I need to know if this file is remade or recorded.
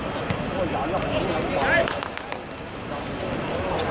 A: recorded